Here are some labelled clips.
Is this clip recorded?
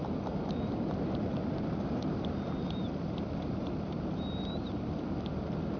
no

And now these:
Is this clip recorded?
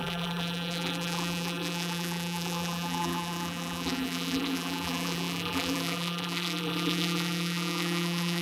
no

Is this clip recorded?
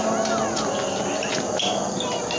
yes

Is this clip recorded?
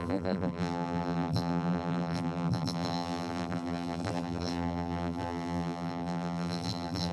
no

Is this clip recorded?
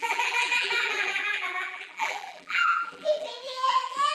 no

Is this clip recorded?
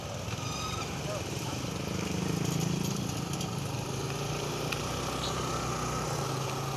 yes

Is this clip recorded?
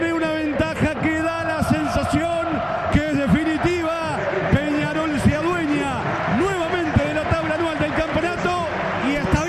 yes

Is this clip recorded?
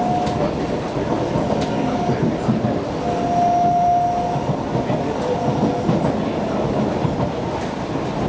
yes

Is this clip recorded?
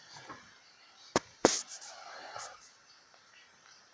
no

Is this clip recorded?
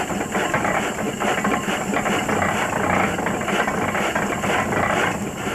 yes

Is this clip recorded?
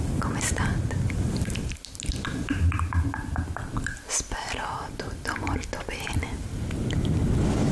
yes